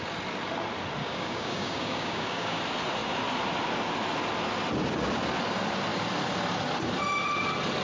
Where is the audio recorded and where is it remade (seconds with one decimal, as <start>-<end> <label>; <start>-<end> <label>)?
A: 0.0-1.0 recorded; 1.0-2.6 remade; 2.6-7.8 recorded